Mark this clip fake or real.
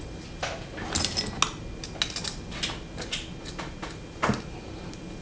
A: real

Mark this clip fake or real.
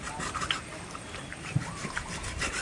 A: fake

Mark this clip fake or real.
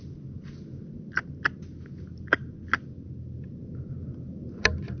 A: real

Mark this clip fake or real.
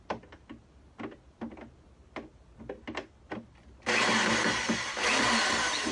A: real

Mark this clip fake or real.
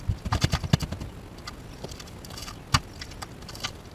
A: real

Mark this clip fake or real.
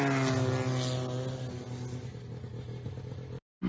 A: real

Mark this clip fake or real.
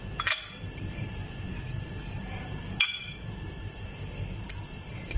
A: fake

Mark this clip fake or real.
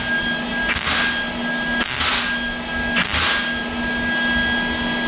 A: real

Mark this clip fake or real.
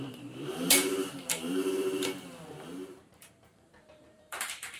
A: fake